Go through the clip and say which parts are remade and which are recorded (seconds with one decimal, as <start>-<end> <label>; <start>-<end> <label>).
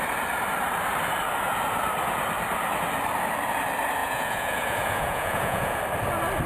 0.0-4.0 recorded; 4.0-5.8 remade; 5.8-6.5 recorded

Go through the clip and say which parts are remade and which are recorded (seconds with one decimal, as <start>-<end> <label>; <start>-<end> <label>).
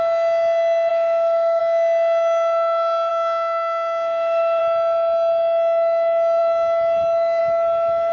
0.0-0.9 recorded; 0.9-1.6 remade; 1.6-3.1 recorded; 3.1-4.6 remade; 4.6-8.1 recorded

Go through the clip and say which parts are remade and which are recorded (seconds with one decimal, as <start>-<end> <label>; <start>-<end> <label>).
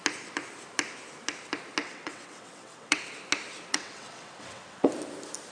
0.0-1.8 recorded; 1.8-3.1 remade; 3.1-3.7 recorded; 3.7-4.9 remade; 4.9-5.5 recorded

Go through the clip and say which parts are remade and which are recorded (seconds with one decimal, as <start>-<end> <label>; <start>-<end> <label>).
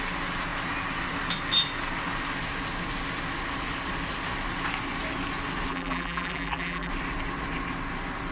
0.0-5.7 recorded; 5.7-6.9 remade; 6.9-8.3 recorded